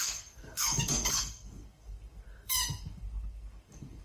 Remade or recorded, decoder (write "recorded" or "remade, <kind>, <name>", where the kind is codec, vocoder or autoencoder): remade, codec, SNAC